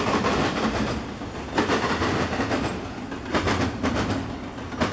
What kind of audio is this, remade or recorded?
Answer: recorded